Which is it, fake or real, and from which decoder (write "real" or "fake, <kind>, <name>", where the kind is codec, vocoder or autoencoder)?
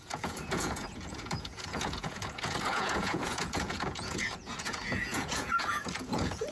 fake, vocoder, Vocos